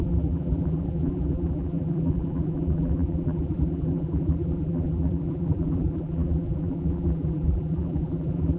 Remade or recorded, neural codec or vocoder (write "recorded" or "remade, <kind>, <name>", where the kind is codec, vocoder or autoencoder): remade, vocoder, BigVGAN v2